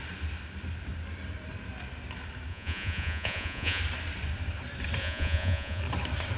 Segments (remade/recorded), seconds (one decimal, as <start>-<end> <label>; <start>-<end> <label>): 0.0-2.5 recorded; 2.5-3.8 remade; 3.8-5.0 recorded; 5.0-5.8 remade; 5.8-6.4 recorded